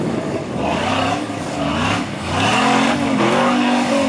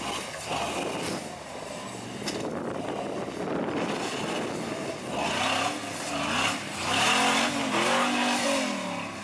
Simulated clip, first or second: first